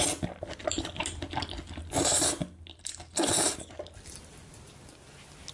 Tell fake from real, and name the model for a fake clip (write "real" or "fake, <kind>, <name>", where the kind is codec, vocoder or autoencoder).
real